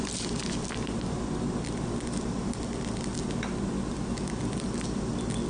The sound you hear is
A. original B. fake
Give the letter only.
A